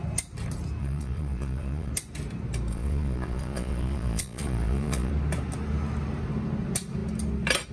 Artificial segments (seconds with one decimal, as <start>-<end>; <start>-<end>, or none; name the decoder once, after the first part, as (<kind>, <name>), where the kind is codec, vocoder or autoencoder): 0.8-1.9 (vocoder, Vocos); 2.7-5.1